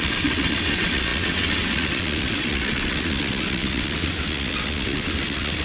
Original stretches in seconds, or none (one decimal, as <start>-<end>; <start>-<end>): none